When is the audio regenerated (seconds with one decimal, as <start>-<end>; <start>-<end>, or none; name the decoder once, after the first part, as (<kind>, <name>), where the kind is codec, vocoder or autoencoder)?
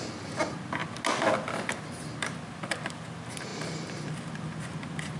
3.5-4.1 (vocoder, BigVGAN v2)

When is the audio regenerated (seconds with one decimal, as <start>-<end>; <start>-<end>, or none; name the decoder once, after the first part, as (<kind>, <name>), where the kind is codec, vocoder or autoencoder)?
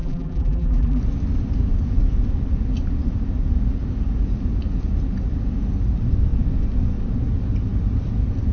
0.0-1.0 (vocoder, BigVGAN v2)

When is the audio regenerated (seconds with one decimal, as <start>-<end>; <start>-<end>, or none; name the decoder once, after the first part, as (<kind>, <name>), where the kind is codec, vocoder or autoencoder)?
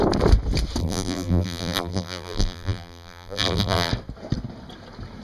0.8-3.9 (vocoder, BigVGAN v2)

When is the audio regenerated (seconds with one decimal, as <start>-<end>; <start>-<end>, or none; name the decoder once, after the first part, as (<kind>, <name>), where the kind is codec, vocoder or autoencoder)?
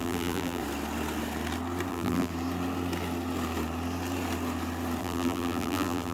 0.0-0.6 (vocoder, BigVGAN v2); 1.9-2.3; 5.0-6.1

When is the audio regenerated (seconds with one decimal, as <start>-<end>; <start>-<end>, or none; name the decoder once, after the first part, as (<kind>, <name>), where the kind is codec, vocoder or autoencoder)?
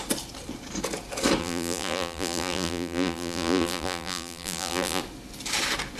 1.4-5.0 (vocoder, BigVGAN v2)